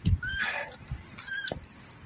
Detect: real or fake real